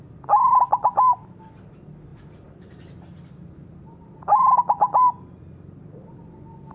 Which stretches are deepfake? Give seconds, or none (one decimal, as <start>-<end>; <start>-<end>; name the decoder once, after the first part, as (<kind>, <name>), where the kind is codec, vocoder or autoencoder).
0.5-1.4 (vocoder, BigVGAN v2); 2.1-6.1